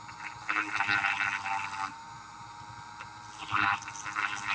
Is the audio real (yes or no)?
yes